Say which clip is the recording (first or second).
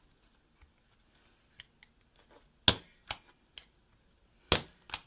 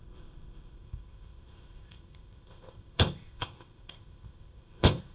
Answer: first